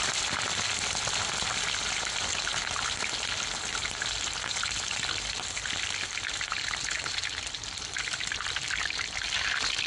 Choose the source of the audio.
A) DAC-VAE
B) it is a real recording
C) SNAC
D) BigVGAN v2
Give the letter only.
B